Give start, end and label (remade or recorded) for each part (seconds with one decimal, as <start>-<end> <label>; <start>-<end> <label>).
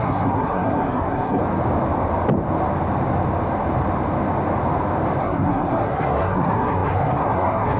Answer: 0.0-1.4 remade; 1.4-5.2 recorded; 5.2-7.8 remade